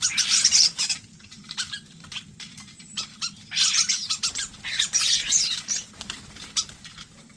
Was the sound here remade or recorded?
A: remade